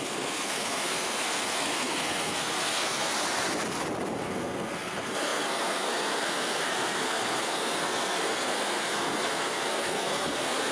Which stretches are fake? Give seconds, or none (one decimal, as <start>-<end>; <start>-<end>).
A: 0.0-3.1; 4.2-10.7